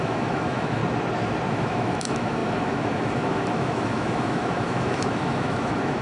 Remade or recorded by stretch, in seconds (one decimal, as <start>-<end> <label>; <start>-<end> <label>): 0.0-0.8 remade; 0.8-1.5 recorded; 1.5-6.0 remade

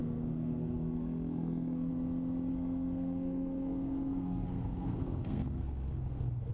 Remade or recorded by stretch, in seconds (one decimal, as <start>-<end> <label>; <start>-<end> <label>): 0.0-1.9 remade; 1.9-2.5 recorded; 2.5-6.5 remade

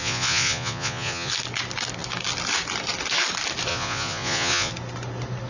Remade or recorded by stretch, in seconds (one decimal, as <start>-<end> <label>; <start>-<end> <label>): 0.0-1.3 remade; 1.3-3.7 recorded; 3.7-4.7 remade; 4.7-5.5 recorded

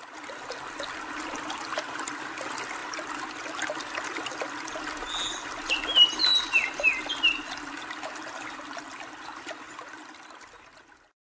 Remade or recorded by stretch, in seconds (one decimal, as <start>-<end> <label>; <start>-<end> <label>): 0.0-11.3 recorded

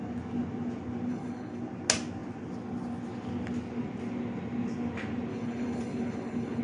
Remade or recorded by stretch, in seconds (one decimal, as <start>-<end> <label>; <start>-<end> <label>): 0.0-1.1 recorded; 1.1-1.6 remade; 1.6-5.3 recorded; 5.3-6.6 remade